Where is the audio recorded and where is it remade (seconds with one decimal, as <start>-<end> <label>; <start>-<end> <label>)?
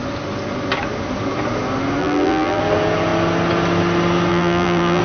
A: 0.0-2.0 recorded; 2.0-2.6 remade; 2.6-4.3 recorded; 4.3-5.0 remade